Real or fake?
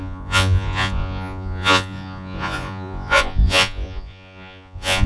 fake